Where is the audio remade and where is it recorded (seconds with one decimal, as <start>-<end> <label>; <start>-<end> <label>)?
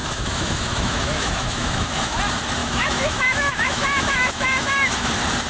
0.0-2.2 remade; 2.2-2.6 recorded; 2.6-5.1 remade; 5.1-5.5 recorded